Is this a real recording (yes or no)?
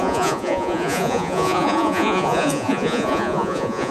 no